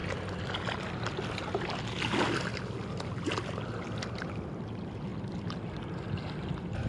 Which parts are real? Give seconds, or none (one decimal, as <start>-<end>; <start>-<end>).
0.0-6.9